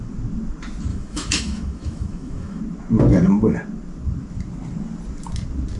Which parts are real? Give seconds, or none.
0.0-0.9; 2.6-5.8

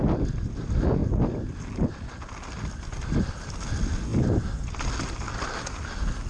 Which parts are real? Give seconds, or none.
0.0-6.3

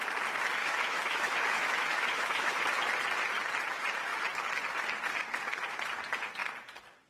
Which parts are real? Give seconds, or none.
0.0-0.6; 2.6-7.1